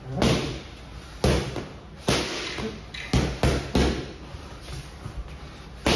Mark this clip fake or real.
real